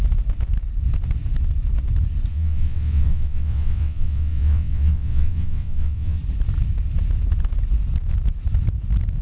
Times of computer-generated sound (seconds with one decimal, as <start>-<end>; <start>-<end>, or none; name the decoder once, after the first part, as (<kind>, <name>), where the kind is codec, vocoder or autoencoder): 2.3-6.2 (vocoder, WaveNeXt)